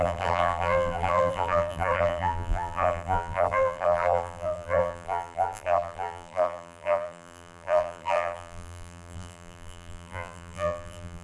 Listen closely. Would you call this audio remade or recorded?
remade